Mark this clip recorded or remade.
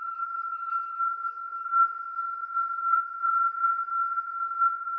remade